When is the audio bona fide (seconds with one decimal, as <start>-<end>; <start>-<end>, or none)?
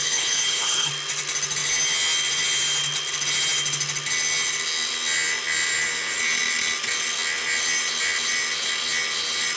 0.9-9.6